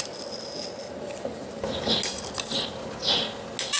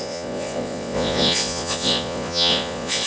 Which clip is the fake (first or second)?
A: second